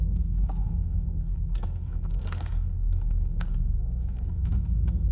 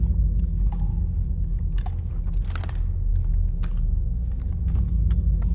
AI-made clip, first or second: first